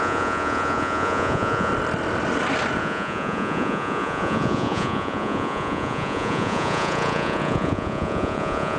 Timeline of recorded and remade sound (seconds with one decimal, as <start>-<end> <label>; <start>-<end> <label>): 0.0-1.7 remade; 1.7-2.8 recorded; 2.8-8.8 remade